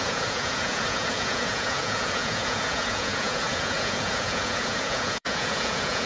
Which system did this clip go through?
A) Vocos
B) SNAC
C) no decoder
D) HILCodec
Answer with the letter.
A